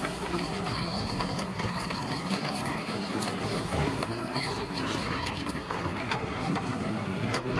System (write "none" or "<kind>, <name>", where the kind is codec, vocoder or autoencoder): codec, SNAC